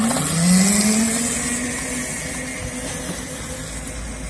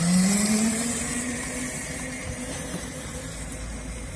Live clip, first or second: first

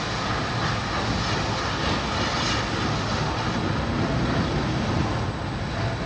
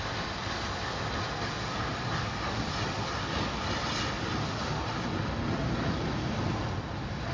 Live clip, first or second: first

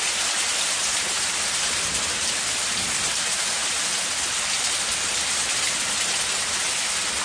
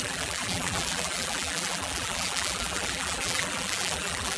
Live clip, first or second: first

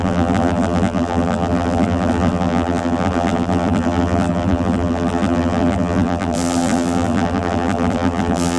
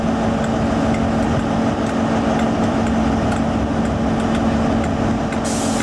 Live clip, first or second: second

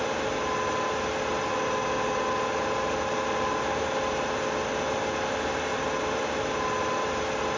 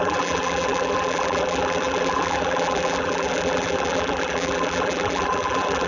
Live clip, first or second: first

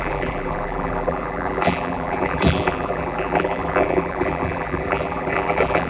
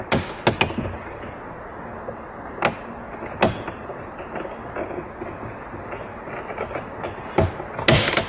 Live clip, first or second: second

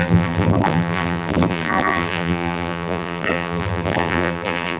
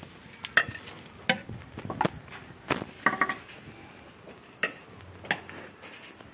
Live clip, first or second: second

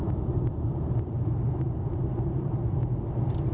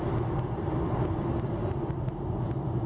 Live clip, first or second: second